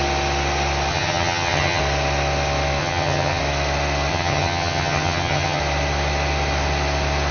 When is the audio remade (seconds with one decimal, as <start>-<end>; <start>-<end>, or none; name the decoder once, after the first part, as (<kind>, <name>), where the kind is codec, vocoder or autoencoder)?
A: 0.9-1.8 (vocoder, HiFi-GAN); 2.8-3.4; 4.1-5.6